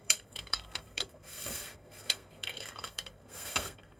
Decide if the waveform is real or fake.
fake